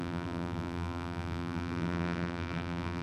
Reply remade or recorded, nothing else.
remade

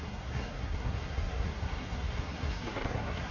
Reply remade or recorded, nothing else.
remade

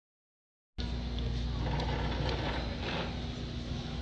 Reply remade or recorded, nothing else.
recorded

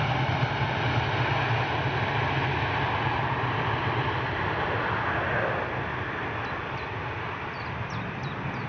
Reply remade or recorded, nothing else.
recorded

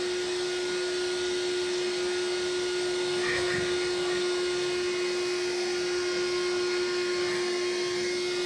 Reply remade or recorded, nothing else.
recorded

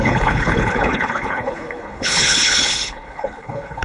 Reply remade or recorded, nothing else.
remade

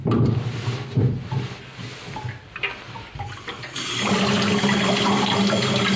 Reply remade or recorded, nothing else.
recorded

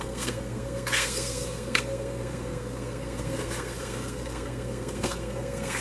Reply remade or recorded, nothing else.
remade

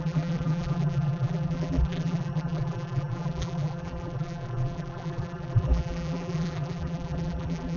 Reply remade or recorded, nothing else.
remade